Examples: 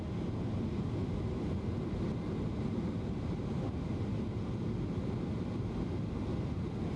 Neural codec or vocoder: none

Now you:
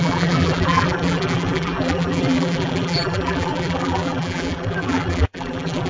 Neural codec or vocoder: vocoder, BigVGAN v2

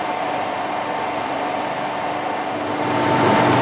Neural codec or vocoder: none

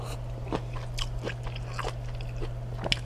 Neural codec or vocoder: none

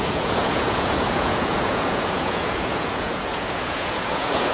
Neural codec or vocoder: vocoder, Vocos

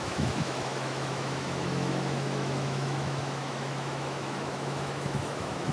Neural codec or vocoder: autoencoder, DAC-VAE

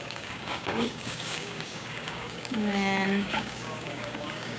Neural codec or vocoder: codec, DAC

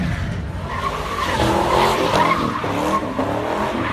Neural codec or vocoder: none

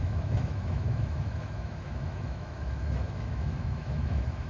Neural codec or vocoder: autoencoder, DAC-VAE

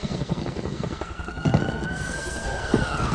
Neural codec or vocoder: codec, SNAC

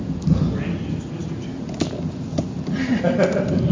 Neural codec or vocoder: none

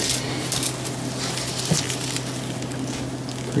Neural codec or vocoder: none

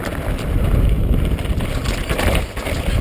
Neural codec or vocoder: none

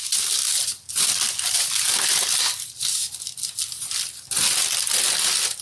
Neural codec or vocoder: none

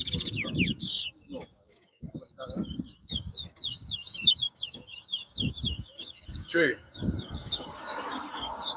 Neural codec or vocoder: codec, DAC